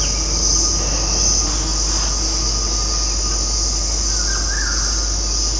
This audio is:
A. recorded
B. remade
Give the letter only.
A